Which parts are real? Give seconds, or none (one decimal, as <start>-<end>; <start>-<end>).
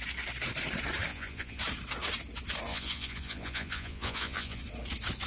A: 0.0-1.1; 1.6-2.7; 4.6-5.3